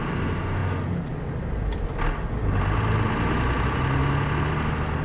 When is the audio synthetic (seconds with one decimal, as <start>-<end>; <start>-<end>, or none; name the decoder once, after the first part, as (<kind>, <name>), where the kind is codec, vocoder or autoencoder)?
none